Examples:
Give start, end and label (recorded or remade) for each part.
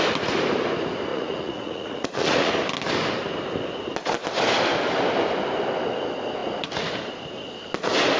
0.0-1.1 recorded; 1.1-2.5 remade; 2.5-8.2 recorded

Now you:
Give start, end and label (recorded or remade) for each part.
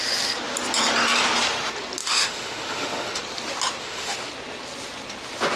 0.0-2.0 recorded; 2.0-3.2 remade; 3.2-3.8 recorded; 3.8-4.3 remade; 4.3-5.6 recorded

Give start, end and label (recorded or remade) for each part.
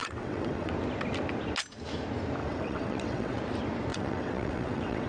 0.0-0.7 remade; 0.7-2.4 recorded; 2.4-3.4 remade; 3.4-3.9 recorded; 3.9-5.1 remade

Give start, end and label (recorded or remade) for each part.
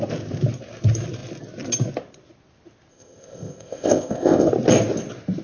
0.0-2.9 recorded; 2.9-4.5 remade; 4.5-5.4 recorded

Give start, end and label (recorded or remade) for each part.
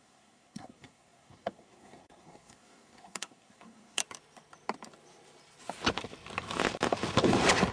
0.0-4.0 remade; 4.0-7.7 recorded